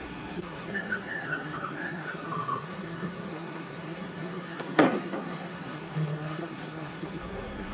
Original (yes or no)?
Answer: no